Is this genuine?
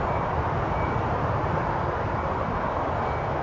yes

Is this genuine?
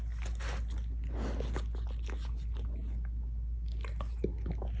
yes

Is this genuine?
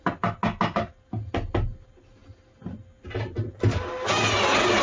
yes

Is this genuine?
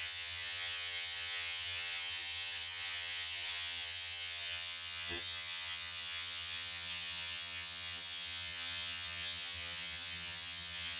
no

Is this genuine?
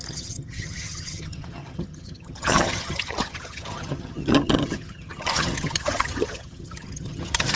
no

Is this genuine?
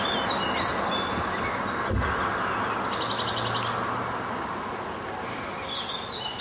yes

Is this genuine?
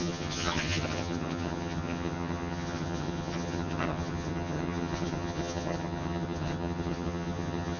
no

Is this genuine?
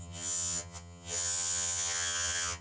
no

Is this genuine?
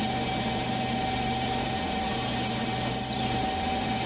yes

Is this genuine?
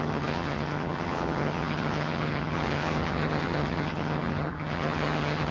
no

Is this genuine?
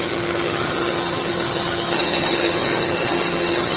no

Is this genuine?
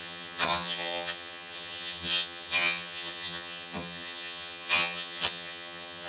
no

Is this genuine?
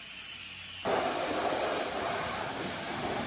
yes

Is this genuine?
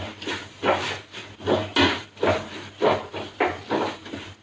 yes